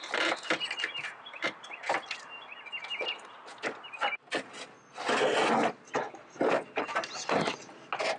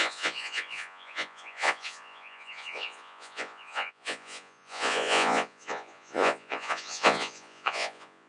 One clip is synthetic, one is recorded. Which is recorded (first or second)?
first